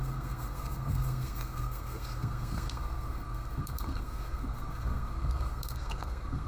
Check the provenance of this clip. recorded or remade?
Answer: remade